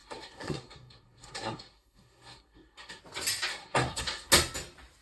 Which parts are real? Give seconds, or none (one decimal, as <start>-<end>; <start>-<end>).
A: 3.0-3.5; 4.3-5.0